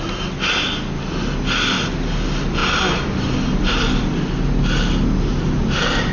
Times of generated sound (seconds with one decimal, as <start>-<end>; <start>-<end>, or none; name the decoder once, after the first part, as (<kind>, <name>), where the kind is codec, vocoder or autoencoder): none